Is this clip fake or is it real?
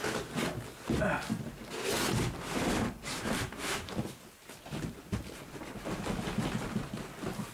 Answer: real